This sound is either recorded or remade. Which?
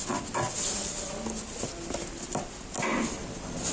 recorded